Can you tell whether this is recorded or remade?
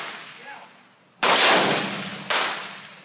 recorded